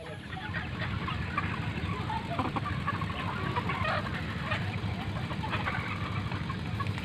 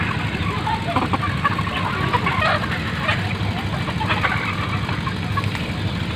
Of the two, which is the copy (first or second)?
first